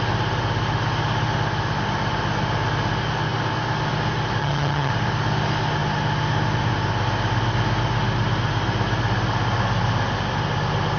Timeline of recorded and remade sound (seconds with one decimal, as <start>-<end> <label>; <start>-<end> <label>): 0.0-4.4 recorded; 4.4-4.9 remade; 4.9-11.0 recorded